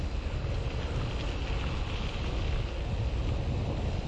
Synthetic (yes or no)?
no